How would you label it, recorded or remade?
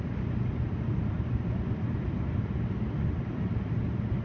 recorded